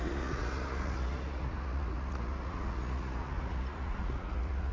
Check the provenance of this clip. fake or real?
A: fake